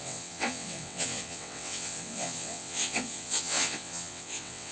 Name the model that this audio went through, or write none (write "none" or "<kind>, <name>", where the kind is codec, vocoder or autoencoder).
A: vocoder, WaveNeXt